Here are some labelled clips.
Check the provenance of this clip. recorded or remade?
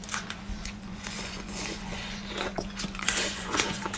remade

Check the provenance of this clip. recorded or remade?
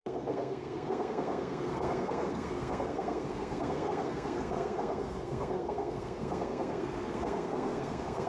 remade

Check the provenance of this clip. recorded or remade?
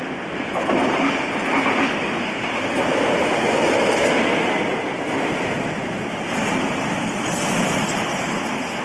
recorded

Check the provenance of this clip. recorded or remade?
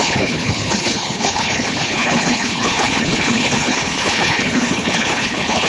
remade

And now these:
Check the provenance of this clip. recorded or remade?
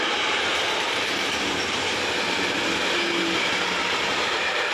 recorded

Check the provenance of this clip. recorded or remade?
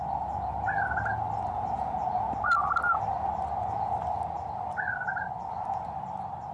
recorded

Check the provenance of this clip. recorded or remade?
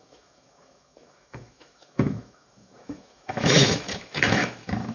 remade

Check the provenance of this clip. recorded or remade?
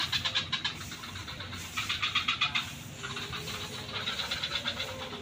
remade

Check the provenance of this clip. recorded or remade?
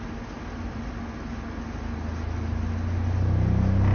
recorded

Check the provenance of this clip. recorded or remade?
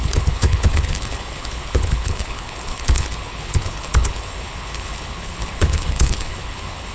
remade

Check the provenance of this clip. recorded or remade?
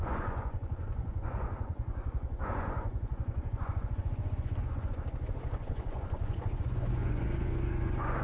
remade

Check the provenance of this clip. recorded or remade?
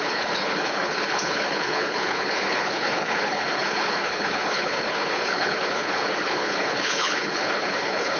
remade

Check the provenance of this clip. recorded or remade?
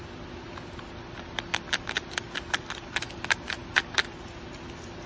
recorded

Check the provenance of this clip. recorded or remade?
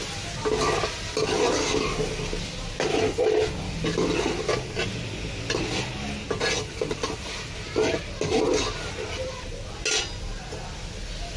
recorded